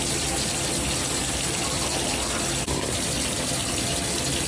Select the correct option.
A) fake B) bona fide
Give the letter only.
B